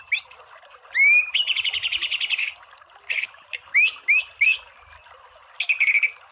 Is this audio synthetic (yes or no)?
no